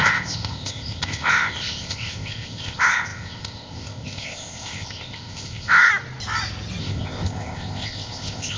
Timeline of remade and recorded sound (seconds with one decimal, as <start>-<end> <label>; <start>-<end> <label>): 0.0-5.9 remade; 5.9-6.8 recorded; 6.8-8.6 remade